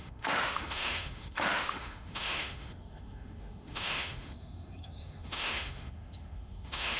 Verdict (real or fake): fake